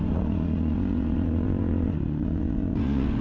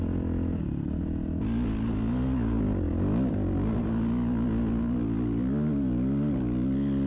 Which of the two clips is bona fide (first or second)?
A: second